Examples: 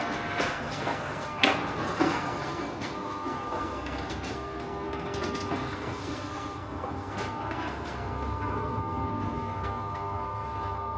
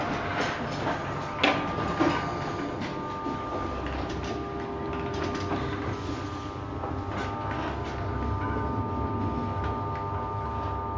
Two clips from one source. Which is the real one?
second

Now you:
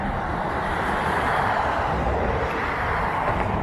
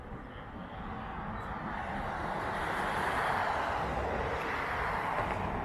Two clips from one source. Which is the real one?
second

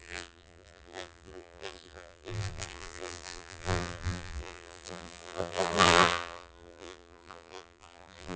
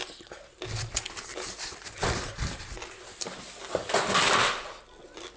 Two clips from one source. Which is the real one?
second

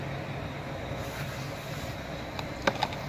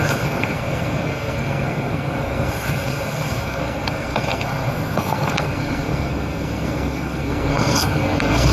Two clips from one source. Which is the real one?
first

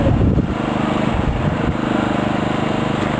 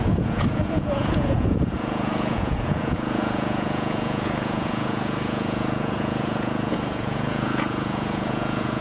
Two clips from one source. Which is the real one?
first